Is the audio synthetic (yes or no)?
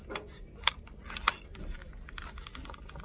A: no